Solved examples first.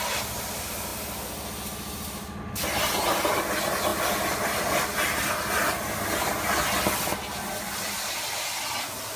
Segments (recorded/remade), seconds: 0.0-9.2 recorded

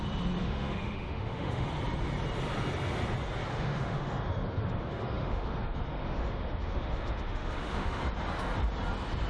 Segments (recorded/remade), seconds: 0.0-0.4 recorded; 0.4-1.7 remade; 1.7-3.5 recorded; 3.5-8.0 remade; 8.0-9.3 recorded

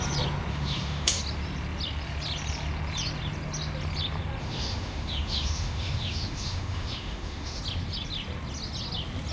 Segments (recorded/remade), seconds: 0.0-0.5 recorded; 0.5-1.2 remade; 1.2-4.4 recorded; 4.4-7.6 remade; 7.6-9.3 recorded

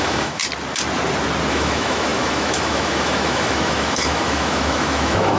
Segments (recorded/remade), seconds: 0.0-0.4 remade; 0.4-1.5 recorded; 1.5-5.4 remade

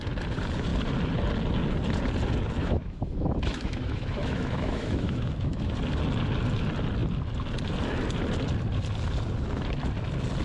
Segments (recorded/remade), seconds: 0.0-2.6 recorded; 2.6-5.7 remade; 5.7-10.4 recorded

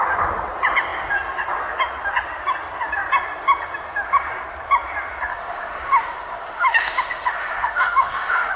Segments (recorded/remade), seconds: 0.0-5.3 recorded; 5.3-8.6 remade

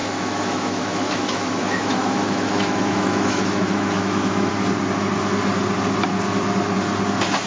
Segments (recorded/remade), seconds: 0.0-4.5 remade; 4.5-7.5 recorded

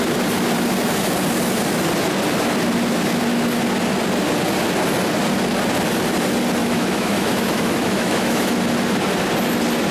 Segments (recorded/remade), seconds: 0.0-6.6 recorded; 6.6-8.5 remade; 8.5-9.9 recorded